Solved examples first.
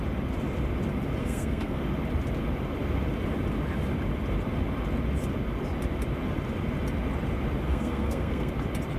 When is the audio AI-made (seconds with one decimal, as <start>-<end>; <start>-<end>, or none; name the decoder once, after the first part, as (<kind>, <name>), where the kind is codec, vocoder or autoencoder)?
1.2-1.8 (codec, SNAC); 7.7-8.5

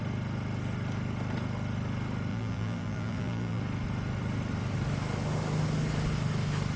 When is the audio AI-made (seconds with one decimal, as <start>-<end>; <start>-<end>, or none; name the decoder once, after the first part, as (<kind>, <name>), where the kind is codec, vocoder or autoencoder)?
2.3-3.6 (vocoder, BigVGAN v2)

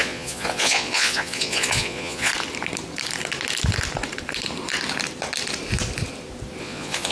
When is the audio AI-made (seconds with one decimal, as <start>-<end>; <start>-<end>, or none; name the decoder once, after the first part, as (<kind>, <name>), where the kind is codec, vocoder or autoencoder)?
0.0-2.3 (vocoder, Vocos); 6.6-7.1

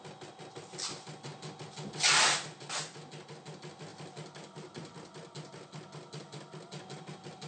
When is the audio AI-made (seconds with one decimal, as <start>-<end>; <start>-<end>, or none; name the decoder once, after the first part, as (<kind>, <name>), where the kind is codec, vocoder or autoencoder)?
none

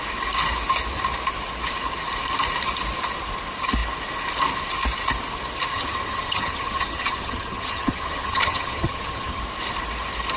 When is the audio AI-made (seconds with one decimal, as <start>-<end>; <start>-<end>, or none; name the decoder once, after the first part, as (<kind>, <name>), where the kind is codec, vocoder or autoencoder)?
5.7-9.4 (vocoder, HiFi-GAN)

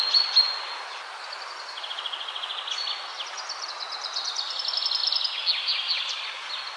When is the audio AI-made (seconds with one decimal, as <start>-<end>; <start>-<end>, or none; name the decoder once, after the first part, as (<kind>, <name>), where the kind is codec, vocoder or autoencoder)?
none